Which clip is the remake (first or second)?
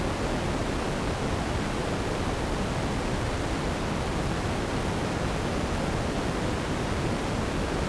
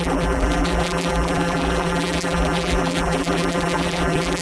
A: second